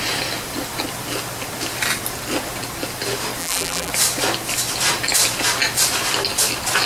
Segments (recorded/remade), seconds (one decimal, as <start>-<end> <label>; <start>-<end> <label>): 0.0-3.4 recorded; 3.4-3.9 remade; 3.9-6.9 recorded